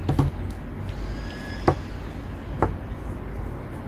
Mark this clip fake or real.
real